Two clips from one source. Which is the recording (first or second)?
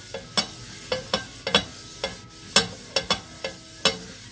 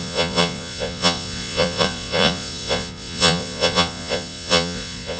first